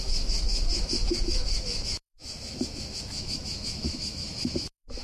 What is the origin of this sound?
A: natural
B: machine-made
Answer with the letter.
B